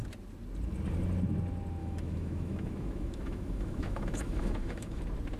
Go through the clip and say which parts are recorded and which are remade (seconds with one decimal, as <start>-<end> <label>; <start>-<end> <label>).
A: 0.0-1.8 recorded; 1.8-5.0 remade; 5.0-5.4 recorded